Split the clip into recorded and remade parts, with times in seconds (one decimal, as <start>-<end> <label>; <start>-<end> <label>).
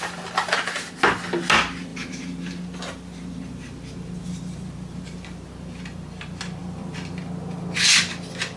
0.0-1.9 recorded; 1.9-5.5 remade; 5.5-6.6 recorded; 6.6-7.2 remade; 7.2-8.6 recorded